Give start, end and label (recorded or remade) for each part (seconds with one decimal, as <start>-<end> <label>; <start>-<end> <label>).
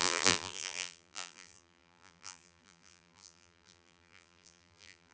0.0-5.1 remade